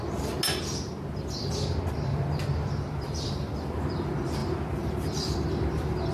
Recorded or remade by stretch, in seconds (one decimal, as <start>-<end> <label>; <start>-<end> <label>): 0.0-6.1 recorded